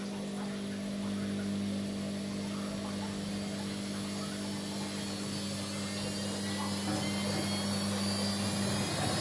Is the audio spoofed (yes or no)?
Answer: no